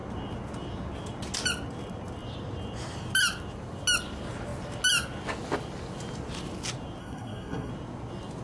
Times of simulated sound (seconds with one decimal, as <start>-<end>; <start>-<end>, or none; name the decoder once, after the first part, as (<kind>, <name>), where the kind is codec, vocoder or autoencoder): 7.0-7.7 (codec, SNAC)